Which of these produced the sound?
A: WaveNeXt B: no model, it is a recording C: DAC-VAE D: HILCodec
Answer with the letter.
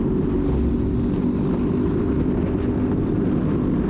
B